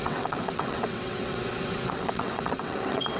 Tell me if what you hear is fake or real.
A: fake